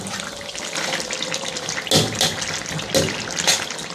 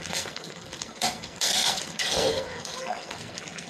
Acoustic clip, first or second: first